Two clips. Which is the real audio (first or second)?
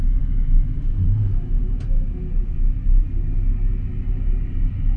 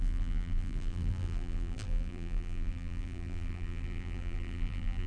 first